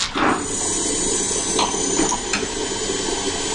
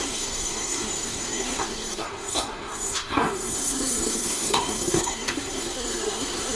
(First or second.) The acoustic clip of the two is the first